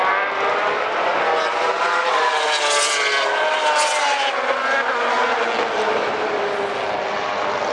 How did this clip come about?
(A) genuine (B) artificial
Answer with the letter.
A